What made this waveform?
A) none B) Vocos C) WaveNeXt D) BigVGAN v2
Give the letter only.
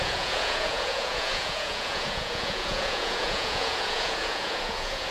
B